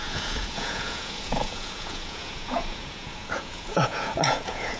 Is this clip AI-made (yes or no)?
yes